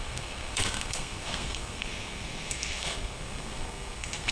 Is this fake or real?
fake